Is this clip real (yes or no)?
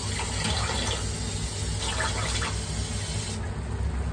yes